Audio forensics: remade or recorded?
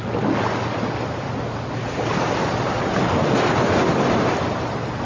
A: recorded